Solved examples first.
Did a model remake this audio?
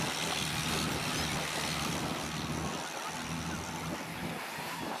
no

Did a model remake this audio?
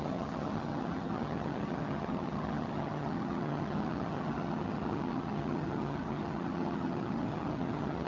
yes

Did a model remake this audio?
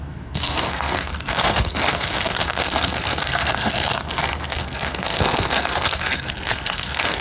yes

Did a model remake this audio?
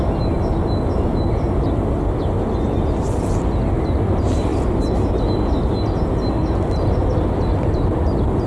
no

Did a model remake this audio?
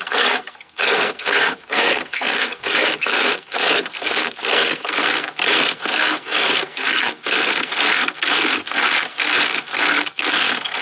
yes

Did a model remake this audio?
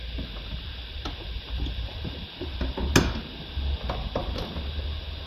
no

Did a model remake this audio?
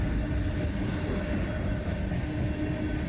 no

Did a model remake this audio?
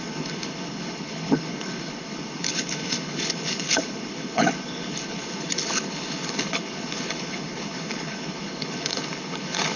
yes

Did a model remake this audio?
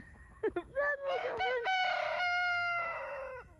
yes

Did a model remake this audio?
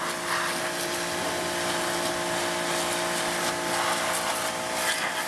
no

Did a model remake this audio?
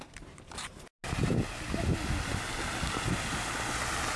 no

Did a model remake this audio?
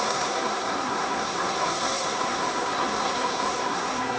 yes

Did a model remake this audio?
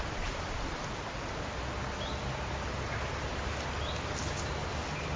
no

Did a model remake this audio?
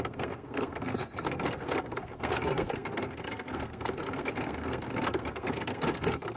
yes